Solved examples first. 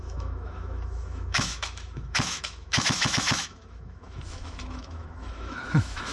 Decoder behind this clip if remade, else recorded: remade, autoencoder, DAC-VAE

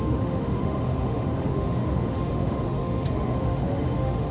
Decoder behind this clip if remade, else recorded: remade, autoencoder, DAC-VAE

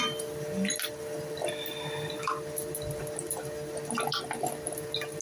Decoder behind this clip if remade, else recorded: recorded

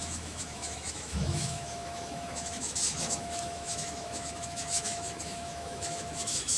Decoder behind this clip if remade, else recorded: remade, autoencoder, DAC-VAE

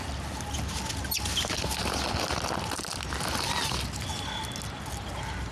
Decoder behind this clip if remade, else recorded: recorded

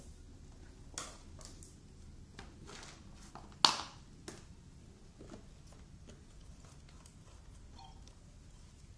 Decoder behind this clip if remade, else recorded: recorded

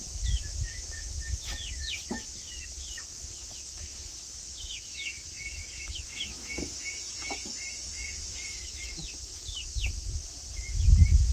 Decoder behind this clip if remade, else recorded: remade, autoencoder, DAC-VAE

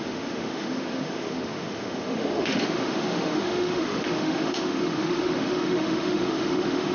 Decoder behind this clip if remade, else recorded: remade, autoencoder, DAC-VAE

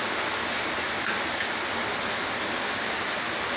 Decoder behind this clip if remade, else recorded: recorded